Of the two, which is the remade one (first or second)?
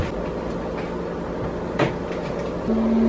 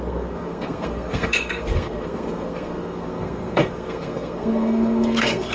second